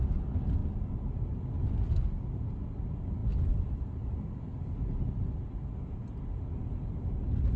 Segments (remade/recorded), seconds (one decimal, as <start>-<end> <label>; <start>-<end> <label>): 0.0-7.6 recorded